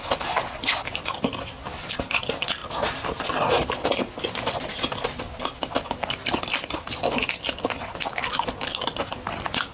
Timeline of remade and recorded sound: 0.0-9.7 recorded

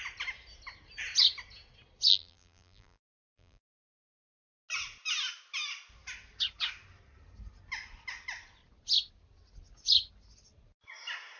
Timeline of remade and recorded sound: 0.0-2.1 recorded; 2.1-3.7 remade; 3.7-11.4 recorded

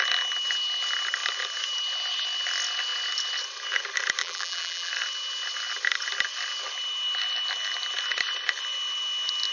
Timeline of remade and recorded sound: 0.0-4.2 recorded; 4.2-4.9 remade; 4.9-9.5 recorded

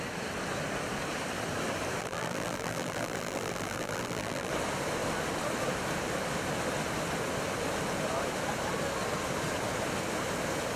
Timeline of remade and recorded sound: 0.0-2.0 recorded; 2.0-4.5 remade; 4.5-10.8 recorded